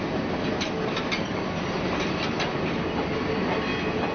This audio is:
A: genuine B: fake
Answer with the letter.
A